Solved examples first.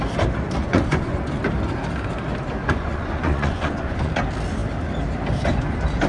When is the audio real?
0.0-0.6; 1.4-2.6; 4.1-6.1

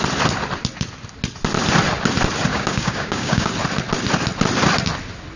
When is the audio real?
0.0-2.5; 3.5-5.4

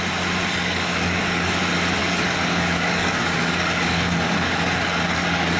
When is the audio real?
0.0-0.4; 1.5-2.0